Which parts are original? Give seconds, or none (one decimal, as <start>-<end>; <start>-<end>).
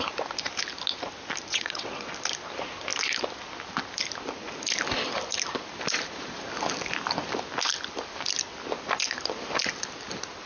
0.0-1.5; 2.1-10.5